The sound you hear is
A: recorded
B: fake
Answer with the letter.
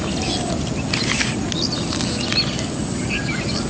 A